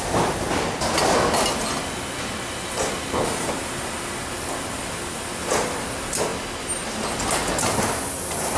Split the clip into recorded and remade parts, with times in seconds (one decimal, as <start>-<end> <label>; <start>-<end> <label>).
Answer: 0.0-8.6 recorded